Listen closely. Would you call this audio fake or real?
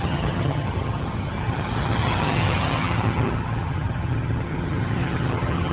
fake